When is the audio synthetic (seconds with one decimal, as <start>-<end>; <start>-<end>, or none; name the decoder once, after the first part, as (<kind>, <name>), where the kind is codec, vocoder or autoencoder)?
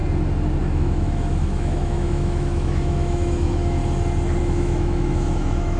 0.6-3.8 (autoencoder, DAC-VAE); 4.4-5.8